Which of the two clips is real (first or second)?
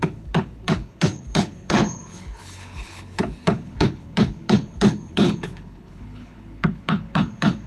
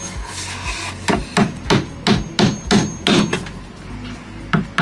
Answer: second